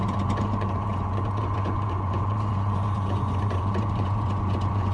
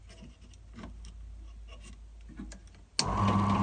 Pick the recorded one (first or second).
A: second